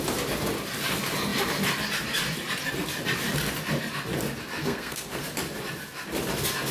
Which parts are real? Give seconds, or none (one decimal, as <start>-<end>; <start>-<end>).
0.0-4.6; 5.2-6.7